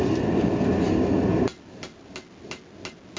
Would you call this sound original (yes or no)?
yes